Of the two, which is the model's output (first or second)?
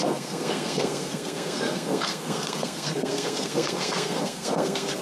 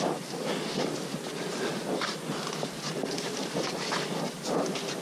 first